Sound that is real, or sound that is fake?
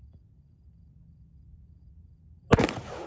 real